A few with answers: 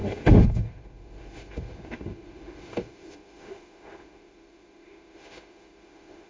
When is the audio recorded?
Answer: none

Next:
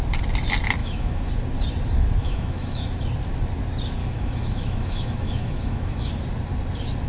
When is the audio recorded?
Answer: 0.0-0.8; 1.3-2.2; 2.9-4.0; 6.1-7.1